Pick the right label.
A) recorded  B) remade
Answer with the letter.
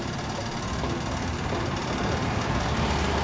A